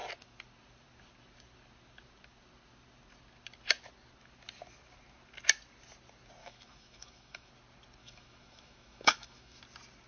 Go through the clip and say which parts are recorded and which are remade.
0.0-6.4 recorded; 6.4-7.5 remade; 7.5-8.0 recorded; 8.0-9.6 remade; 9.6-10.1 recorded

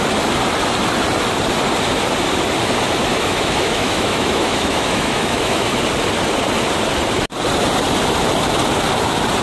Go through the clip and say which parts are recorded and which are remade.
0.0-3.1 recorded; 3.1-5.8 remade; 5.8-9.4 recorded